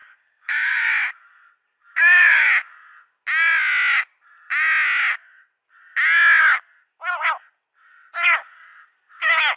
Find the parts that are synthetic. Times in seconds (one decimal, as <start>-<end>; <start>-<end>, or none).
0.0-0.9; 1.8-2.5